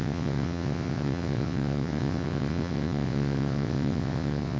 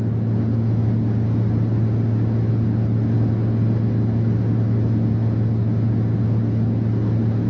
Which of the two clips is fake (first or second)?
first